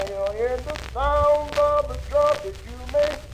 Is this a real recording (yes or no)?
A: yes